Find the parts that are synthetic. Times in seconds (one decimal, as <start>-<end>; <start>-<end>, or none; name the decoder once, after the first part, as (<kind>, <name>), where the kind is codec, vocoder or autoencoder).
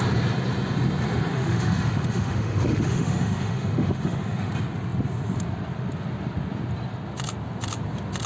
1.3-4.5 (autoencoder, DAC-VAE)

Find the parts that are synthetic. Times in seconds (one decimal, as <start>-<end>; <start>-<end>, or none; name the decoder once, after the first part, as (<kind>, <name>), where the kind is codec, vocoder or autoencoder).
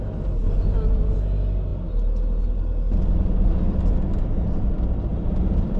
5.1-5.8 (vocoder, BigVGAN v2)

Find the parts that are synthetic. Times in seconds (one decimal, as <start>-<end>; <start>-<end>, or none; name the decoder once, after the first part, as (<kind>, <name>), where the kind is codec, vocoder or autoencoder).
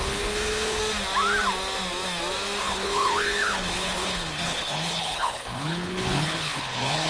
0.0-0.8 (codec, HILCodec); 2.6-7.1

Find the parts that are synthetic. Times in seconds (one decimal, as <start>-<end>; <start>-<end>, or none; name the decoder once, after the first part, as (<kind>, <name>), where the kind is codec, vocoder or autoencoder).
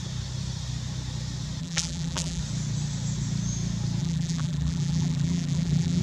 1.6-2.4 (vocoder, BigVGAN v2); 4.0-6.0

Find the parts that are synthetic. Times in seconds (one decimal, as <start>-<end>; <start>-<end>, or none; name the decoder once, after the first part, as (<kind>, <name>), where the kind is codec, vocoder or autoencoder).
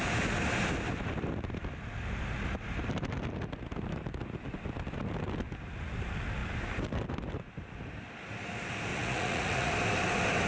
8.9-9.7 (vocoder, Vocos)